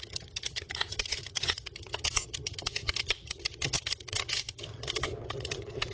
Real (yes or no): no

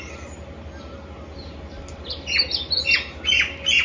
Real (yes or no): yes